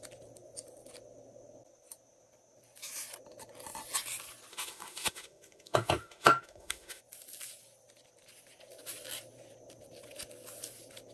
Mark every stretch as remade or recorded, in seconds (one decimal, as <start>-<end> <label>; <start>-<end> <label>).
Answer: 0.0-4.5 recorded; 4.5-7.0 remade; 7.0-11.1 recorded